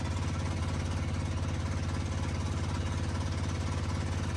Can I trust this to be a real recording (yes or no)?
yes